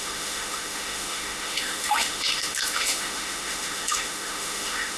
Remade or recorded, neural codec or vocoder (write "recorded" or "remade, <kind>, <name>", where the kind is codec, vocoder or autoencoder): remade, autoencoder, DAC-VAE